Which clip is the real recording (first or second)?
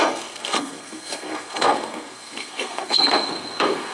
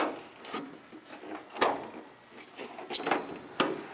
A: second